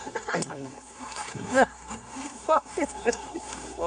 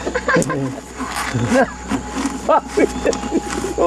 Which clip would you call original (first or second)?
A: second